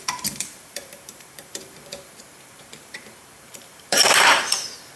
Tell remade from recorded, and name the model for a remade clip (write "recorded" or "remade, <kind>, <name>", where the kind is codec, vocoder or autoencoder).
remade, vocoder, BigVGAN v2